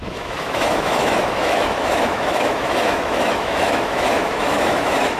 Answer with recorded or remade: remade